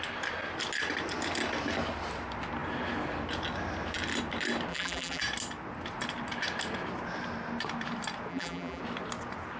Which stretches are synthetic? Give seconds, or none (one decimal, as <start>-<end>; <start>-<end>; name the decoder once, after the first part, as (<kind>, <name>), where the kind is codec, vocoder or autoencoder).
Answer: 4.7-5.2 (vocoder, BigVGAN v2); 8.3-8.8